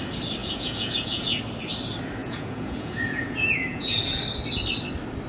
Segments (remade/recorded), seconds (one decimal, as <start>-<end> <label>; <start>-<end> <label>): 0.0-0.4 recorded; 0.4-1.4 remade; 1.4-2.2 recorded; 2.2-4.2 remade; 4.2-5.3 recorded